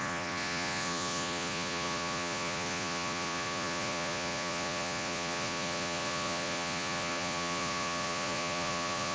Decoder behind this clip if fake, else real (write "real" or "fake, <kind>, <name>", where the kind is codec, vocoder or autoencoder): fake, vocoder, Vocos